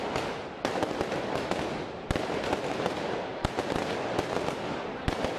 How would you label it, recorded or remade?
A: recorded